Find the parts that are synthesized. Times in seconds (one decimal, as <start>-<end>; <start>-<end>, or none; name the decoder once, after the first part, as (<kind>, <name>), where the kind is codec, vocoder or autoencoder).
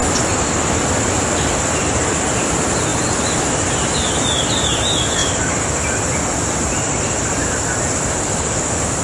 none